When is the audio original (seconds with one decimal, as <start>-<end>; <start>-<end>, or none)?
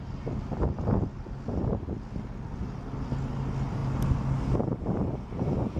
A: 0.0-5.8